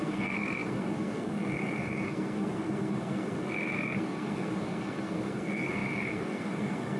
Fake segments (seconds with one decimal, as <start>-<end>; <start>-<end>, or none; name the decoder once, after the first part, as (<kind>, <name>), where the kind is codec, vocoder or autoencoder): 0.0-7.0 (codec, SNAC)